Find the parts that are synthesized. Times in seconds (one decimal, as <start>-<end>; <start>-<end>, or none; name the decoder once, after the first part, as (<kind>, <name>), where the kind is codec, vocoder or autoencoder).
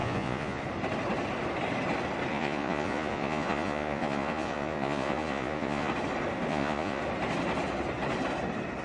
0.0-0.6 (vocoder, Vocos); 2.3-5.9; 6.5-7.0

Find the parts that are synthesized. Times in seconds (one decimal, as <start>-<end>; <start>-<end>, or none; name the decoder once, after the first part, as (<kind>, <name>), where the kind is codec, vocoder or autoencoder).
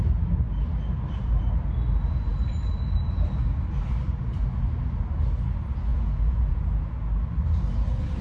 5.9-6.6 (vocoder, Vocos)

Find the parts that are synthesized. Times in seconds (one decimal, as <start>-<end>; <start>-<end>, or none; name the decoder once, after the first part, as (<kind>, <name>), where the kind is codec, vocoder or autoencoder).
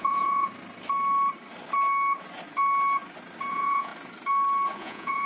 0.0-0.5 (vocoder, Vocos); 3.5-3.9; 4.8-5.3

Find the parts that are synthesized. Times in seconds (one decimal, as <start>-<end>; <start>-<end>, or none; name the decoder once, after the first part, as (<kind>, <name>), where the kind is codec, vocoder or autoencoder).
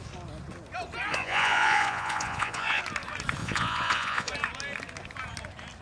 1.1-2.8 (vocoder, Vocos); 3.4-4.3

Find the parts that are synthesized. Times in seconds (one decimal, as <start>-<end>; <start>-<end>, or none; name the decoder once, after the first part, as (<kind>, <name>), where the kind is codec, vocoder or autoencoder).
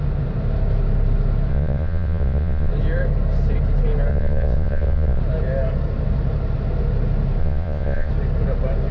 1.5-2.7 (vocoder, Vocos); 4.1-5.2; 7.4-8.1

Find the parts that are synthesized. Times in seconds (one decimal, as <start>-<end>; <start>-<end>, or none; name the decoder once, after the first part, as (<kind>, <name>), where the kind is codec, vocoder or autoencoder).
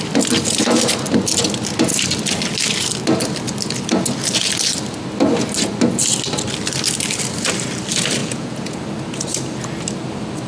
8.2-8.8 (vocoder, Vocos)